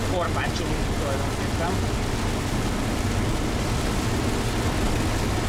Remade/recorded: recorded